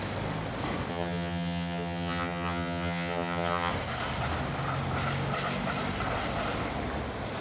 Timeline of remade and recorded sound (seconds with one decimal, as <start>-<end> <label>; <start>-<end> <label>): 0.0-0.9 recorded; 0.9-3.7 remade; 3.7-7.4 recorded